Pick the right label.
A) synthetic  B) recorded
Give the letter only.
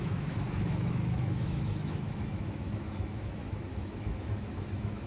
A